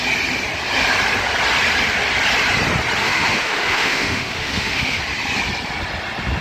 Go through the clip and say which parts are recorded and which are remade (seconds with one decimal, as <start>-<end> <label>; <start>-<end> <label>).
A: 0.0-3.0 recorded; 3.0-5.0 remade; 5.0-6.4 recorded